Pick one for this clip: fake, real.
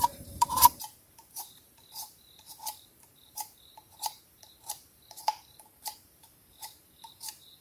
fake